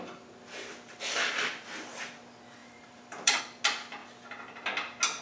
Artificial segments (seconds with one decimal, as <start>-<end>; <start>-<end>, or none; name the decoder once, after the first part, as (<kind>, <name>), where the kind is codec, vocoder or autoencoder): 2.6-3.4 (vocoder, BigVGAN v2)